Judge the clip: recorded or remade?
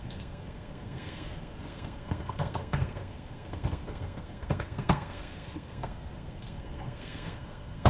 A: remade